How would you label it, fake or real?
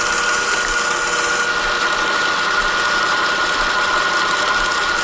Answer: real